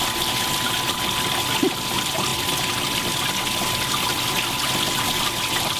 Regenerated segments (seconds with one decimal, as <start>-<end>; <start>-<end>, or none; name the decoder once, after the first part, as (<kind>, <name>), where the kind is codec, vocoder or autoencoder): none